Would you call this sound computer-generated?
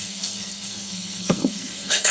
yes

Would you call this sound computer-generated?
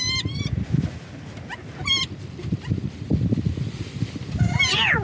no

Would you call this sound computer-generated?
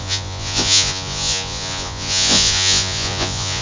yes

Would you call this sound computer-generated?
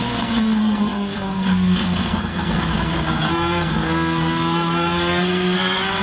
yes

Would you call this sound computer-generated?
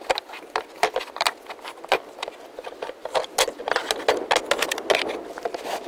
no